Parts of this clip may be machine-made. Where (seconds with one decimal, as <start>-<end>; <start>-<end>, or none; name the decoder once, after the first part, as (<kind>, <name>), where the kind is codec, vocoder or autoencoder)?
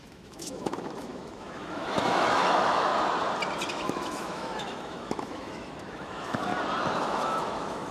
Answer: 0.0-2.9 (autoencoder, DAC-VAE); 3.7-6.5; 7.0-7.9